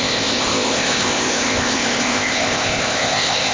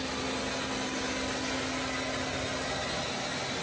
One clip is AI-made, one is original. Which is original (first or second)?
second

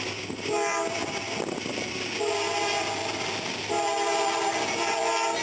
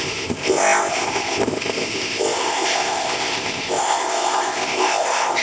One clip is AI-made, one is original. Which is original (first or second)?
first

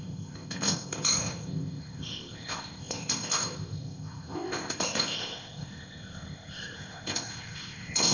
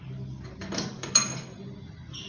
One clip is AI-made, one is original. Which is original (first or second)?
second